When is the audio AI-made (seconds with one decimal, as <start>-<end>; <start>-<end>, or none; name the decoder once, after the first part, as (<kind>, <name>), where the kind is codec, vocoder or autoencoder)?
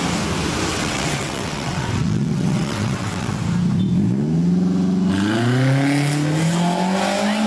0.7-3.4 (vocoder, WaveNeXt)